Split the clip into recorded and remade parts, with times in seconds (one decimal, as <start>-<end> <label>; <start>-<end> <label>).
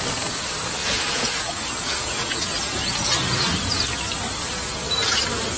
0.0-0.8 recorded; 0.8-3.1 remade; 3.1-5.6 recorded